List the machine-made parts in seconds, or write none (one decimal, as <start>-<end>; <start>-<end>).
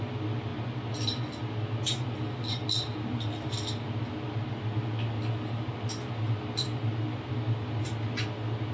none